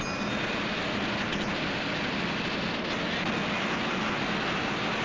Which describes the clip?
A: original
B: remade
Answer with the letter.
A